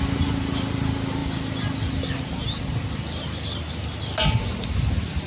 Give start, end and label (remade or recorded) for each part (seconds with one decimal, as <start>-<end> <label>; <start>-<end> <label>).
0.0-5.3 recorded